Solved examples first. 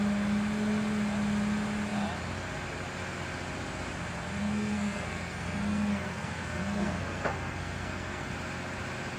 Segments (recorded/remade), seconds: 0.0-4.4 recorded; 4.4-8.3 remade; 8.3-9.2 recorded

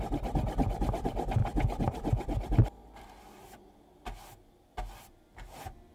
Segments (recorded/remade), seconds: 0.0-5.9 recorded

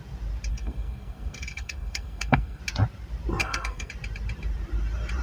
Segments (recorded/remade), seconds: 0.0-0.5 recorded; 0.5-2.6 remade; 2.6-3.4 recorded; 3.4-3.9 remade; 3.9-5.2 recorded

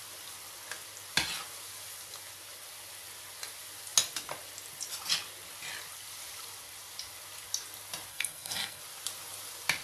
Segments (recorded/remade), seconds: 0.0-8.1 recorded; 8.1-8.8 remade; 8.8-9.8 recorded

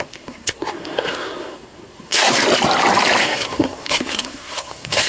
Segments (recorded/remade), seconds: 0.0-2.4 remade; 2.4-3.2 recorded; 3.2-5.1 remade